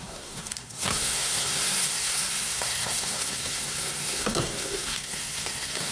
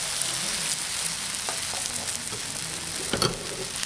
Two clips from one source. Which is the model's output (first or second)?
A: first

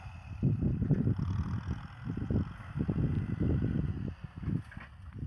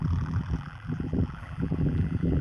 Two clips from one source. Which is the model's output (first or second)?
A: second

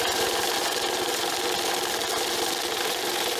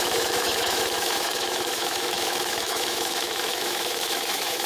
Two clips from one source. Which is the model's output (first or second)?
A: second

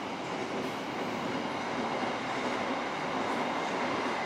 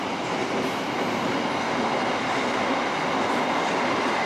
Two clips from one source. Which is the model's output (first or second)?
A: second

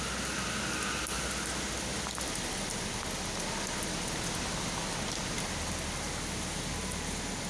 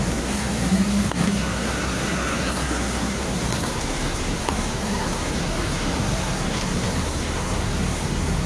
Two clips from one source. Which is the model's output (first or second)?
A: second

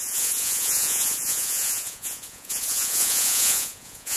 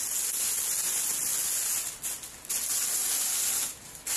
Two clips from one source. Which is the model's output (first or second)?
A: first